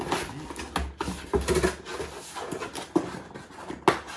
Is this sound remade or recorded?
recorded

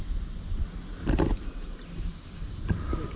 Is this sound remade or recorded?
recorded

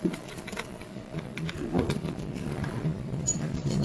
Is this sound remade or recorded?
remade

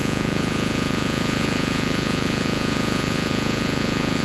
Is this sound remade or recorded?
remade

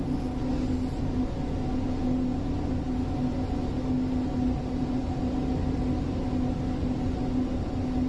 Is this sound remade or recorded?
recorded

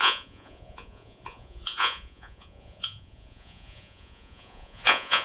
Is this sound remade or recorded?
remade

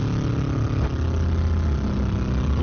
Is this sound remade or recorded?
recorded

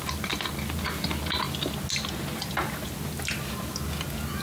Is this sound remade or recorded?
recorded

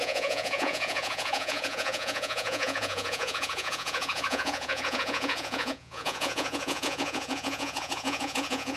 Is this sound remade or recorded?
remade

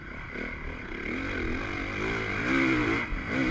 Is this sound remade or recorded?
recorded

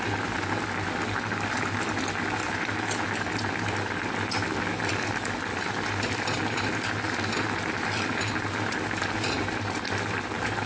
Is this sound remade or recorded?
recorded